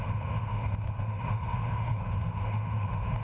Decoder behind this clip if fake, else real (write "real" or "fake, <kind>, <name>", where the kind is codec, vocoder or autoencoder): fake, autoencoder, DAC-VAE